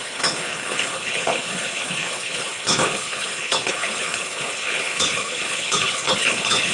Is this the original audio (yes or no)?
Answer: no